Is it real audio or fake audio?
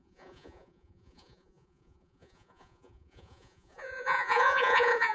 fake